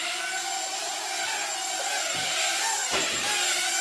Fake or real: real